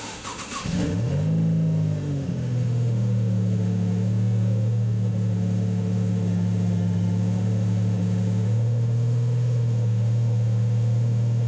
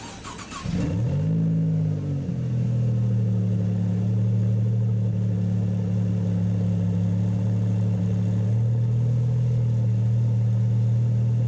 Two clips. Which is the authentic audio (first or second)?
second